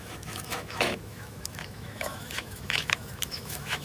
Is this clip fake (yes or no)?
yes